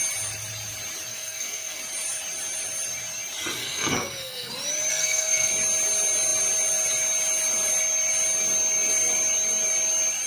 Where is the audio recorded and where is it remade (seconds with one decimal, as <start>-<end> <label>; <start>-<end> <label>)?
0.0-1.1 recorded; 1.1-1.8 remade; 1.8-3.6 recorded; 3.6-4.5 remade; 4.5-4.9 recorded; 4.9-5.5 remade; 5.5-10.3 recorded